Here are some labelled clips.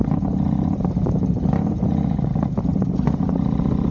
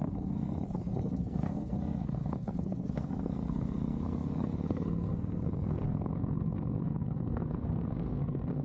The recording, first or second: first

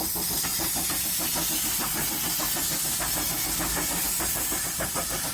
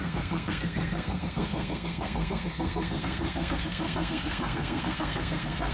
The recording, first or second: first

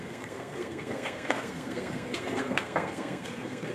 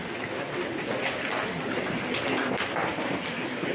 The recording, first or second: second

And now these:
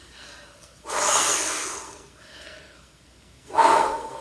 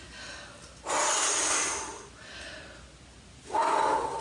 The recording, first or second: second